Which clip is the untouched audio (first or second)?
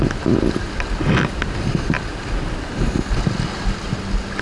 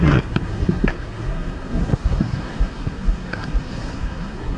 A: first